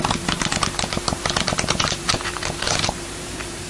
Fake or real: fake